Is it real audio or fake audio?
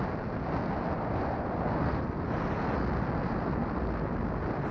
real